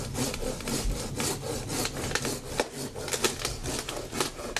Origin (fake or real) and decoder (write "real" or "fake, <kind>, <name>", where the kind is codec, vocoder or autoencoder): real